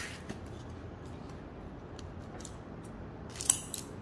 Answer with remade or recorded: recorded